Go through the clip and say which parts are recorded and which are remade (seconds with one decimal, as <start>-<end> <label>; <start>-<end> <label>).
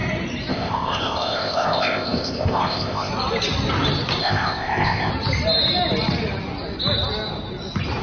0.0-0.5 recorded; 0.5-3.1 remade; 3.1-4.2 recorded; 4.2-5.1 remade; 5.1-8.0 recorded